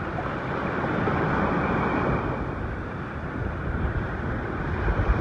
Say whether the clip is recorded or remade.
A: recorded